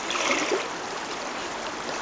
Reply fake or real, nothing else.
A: real